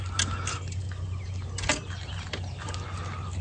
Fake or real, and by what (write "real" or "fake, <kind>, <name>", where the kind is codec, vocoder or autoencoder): real